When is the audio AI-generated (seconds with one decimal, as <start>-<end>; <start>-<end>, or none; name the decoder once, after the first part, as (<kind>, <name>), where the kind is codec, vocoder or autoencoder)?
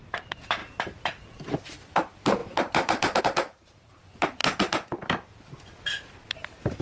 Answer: 0.0-0.6 (vocoder, BigVGAN v2); 1.9-4.4; 6.2-6.8